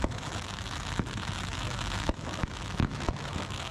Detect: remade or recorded remade